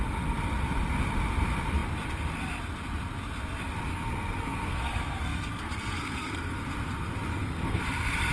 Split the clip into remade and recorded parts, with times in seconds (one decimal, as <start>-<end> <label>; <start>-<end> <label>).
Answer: 0.0-3.9 recorded; 3.9-6.6 remade; 6.6-7.3 recorded; 7.3-7.8 remade; 7.8-8.3 recorded